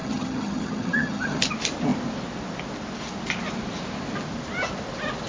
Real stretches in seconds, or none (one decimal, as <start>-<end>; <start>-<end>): 1.4-5.3